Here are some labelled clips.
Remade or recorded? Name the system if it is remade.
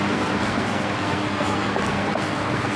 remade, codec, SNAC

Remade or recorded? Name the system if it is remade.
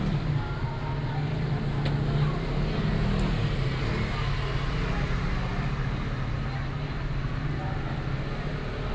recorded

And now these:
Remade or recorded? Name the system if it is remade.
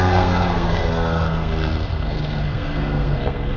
remade, codec, SNAC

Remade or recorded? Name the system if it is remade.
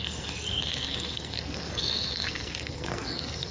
remade, codec, SNAC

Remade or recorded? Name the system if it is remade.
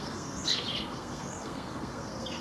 remade, codec, SNAC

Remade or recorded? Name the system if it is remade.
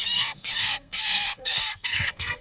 remade, codec, SNAC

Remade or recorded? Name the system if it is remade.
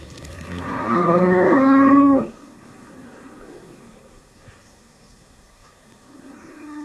remade, codec, SNAC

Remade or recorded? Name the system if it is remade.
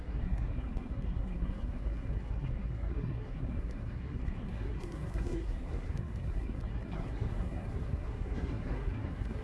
remade, codec, SNAC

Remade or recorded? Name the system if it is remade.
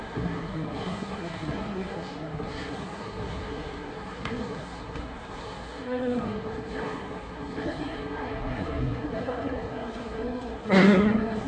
remade, codec, SNAC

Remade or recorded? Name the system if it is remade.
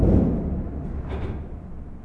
recorded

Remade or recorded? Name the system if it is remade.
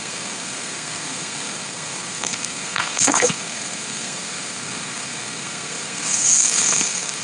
remade, codec, SNAC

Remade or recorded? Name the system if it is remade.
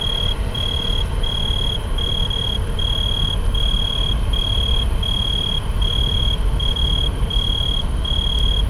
recorded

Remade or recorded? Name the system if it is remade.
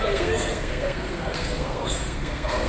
remade, codec, SNAC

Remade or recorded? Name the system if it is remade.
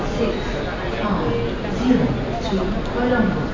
recorded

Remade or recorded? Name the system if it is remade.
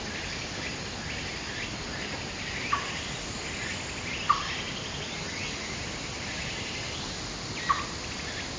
recorded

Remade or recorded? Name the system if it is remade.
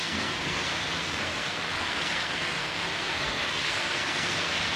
remade, codec, SNAC